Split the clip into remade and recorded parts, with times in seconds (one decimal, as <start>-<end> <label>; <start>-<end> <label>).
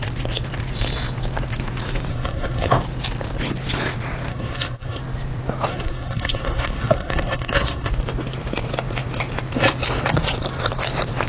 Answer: 0.0-2.1 recorded; 2.1-2.7 remade; 2.7-4.3 recorded; 4.3-5.0 remade; 5.0-5.7 recorded; 5.7-7.9 remade; 7.9-11.3 recorded